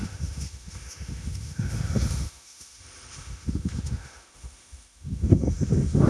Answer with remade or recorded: remade